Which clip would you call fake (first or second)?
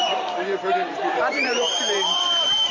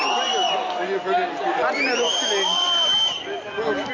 first